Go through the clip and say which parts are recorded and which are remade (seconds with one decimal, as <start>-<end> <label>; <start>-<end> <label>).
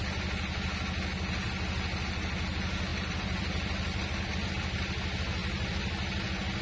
0.0-2.9 recorded; 2.9-4.5 remade; 4.5-5.4 recorded; 5.4-6.6 remade